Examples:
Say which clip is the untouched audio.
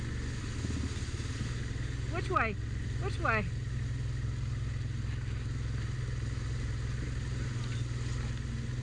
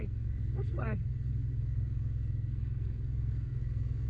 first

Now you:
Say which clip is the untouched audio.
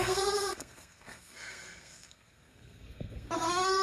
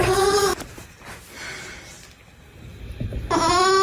second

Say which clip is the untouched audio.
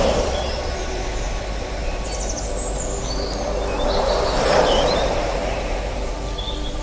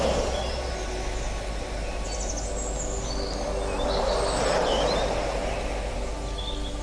second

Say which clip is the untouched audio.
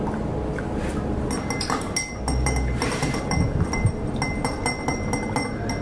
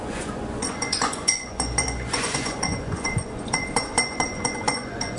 first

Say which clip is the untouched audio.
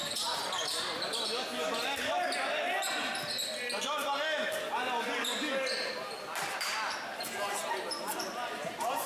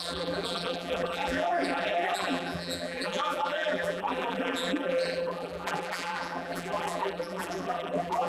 first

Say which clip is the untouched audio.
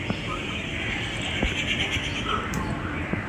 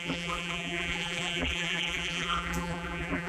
first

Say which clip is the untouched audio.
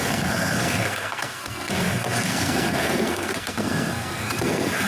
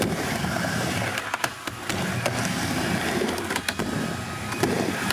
second